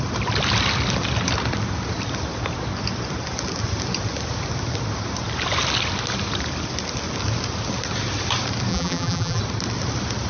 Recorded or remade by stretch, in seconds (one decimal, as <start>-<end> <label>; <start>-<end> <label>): 0.0-8.7 recorded; 8.7-9.4 remade; 9.4-10.3 recorded